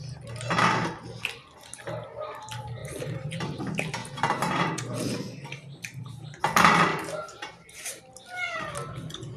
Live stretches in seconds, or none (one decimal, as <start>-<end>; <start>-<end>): 0.0-2.8; 3.6-4.0; 6.4-6.9; 8.0-9.4